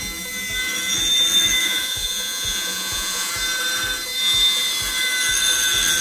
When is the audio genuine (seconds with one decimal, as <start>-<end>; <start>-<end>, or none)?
0.0-1.6; 3.3-6.0

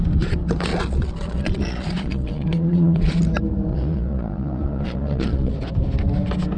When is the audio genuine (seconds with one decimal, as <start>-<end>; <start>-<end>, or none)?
0.0-0.7; 3.2-3.7; 5.5-6.6